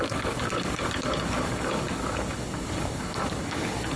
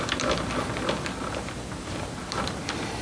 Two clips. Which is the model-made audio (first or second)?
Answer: first